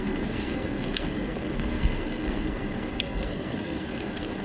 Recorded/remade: remade